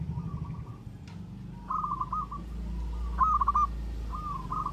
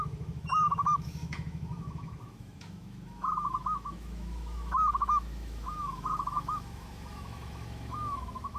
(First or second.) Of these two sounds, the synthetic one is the second